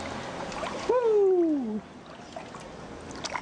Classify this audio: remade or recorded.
recorded